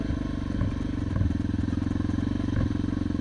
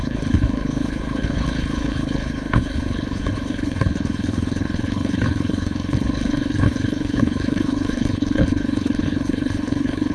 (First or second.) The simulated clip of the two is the second